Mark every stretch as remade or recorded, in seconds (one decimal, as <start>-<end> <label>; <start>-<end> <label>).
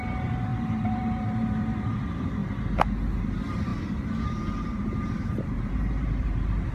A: 0.0-2.4 remade; 2.4-3.2 recorded; 3.2-6.7 remade